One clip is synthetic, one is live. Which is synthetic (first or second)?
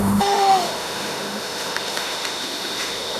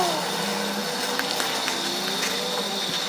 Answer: first